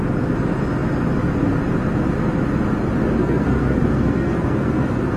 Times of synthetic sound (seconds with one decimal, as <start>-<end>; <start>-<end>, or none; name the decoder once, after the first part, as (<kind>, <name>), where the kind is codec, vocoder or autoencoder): 3.2-5.2 (codec, SNAC)